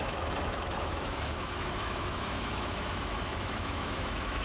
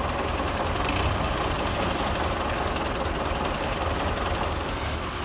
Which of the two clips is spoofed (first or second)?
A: first